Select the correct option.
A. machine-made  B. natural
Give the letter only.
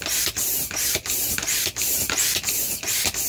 B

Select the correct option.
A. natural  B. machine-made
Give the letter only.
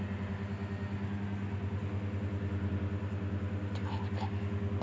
A